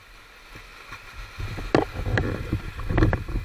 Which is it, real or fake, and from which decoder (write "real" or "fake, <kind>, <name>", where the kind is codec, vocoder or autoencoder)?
real